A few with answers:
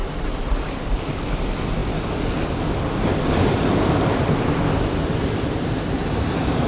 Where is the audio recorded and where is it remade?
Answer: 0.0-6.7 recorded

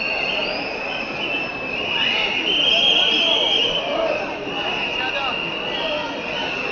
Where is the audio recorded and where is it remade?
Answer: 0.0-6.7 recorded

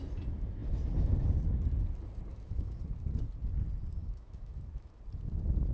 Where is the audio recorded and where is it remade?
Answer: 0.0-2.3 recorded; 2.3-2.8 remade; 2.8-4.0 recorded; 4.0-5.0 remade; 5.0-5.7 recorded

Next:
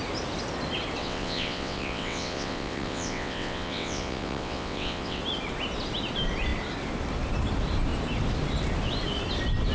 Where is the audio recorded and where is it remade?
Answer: 0.0-1.0 recorded; 1.0-5.2 remade; 5.2-9.7 recorded

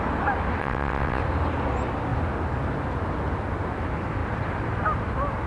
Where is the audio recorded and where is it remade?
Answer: 0.0-0.6 recorded; 0.6-1.2 remade; 1.2-5.5 recorded

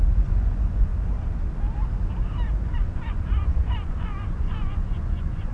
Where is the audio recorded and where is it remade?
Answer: 0.0-0.9 remade; 0.9-2.6 recorded; 2.6-5.5 remade